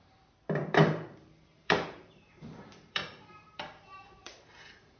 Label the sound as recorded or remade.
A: remade